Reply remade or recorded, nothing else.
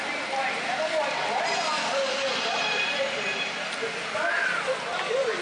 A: remade